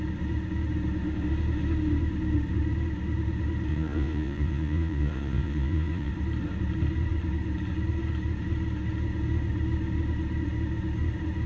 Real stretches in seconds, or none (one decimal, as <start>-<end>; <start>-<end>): 0.0-3.7; 6.1-11.5